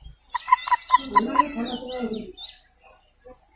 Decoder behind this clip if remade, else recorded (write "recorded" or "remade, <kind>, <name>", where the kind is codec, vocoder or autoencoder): recorded